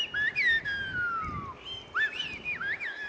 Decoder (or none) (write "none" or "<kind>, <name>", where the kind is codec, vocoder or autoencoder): none